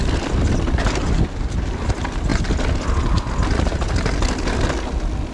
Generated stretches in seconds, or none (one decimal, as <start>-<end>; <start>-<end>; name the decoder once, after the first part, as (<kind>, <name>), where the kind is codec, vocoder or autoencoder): none